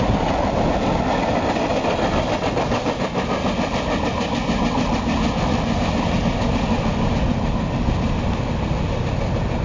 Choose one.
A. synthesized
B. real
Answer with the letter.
B